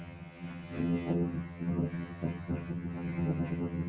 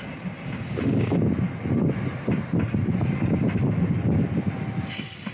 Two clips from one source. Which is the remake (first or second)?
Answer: first